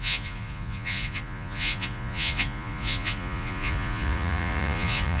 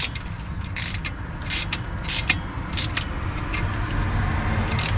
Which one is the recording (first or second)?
second